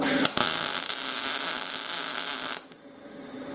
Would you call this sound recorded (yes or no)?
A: yes